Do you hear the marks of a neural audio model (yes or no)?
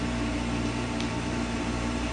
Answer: yes